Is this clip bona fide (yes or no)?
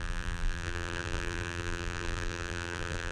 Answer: no